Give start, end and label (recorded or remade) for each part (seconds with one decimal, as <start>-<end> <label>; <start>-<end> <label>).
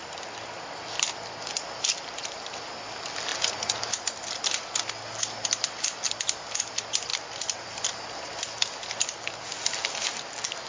0.0-10.7 recorded